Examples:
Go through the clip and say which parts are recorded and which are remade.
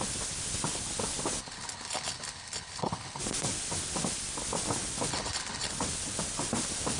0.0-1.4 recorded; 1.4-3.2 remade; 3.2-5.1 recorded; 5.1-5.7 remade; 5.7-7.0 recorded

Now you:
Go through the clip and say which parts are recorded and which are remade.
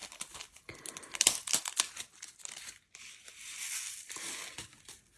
0.0-5.2 recorded